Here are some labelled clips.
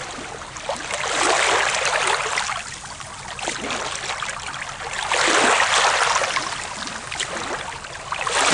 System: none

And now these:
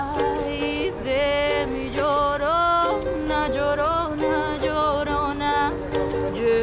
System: none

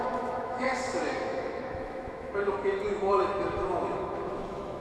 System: autoencoder, DAC-VAE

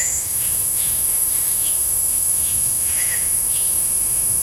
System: autoencoder, DAC-VAE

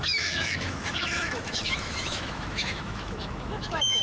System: autoencoder, DAC-VAE